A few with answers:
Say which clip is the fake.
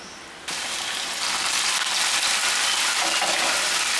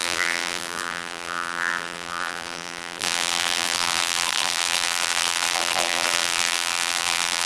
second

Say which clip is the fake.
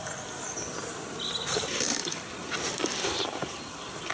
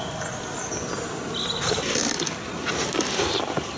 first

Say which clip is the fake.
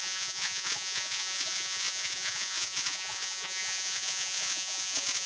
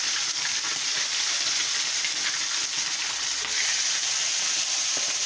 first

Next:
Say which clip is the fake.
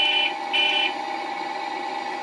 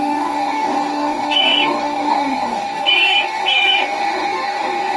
second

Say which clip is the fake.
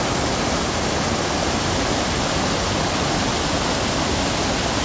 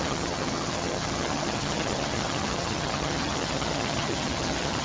second